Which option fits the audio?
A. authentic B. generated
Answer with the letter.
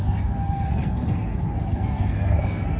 B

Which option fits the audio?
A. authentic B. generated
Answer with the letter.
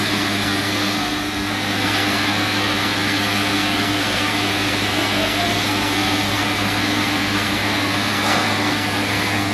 B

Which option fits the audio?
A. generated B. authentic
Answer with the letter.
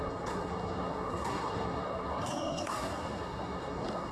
A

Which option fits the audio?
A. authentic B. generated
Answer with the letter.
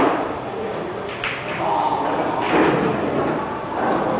A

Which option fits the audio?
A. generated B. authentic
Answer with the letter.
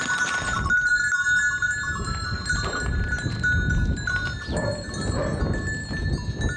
B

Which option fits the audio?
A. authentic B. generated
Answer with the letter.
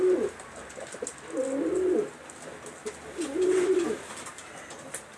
A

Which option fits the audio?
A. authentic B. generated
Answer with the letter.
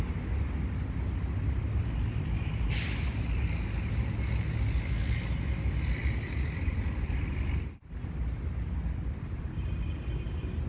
A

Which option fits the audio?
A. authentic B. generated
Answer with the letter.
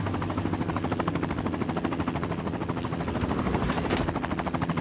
A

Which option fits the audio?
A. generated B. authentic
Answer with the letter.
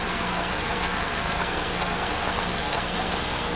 A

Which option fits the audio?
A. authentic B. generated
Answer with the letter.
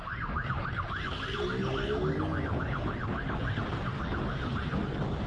A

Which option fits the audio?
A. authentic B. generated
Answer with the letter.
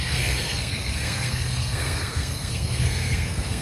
B